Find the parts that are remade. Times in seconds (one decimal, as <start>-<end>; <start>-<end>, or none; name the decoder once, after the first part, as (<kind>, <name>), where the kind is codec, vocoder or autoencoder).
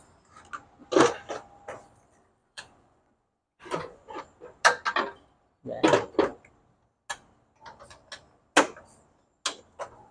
2.4-4.2 (vocoder, Vocos)